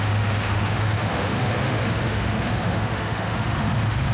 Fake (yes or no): yes